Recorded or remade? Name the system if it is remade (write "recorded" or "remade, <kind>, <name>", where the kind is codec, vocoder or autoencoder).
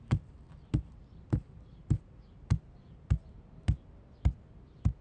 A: recorded